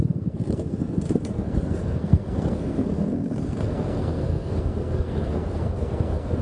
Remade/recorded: remade